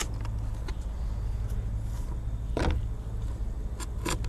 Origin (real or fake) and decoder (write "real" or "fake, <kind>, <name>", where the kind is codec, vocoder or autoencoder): real